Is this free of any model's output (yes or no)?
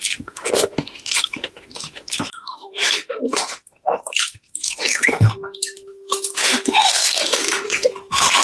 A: no